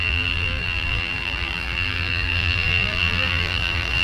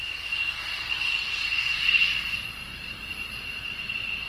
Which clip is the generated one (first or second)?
first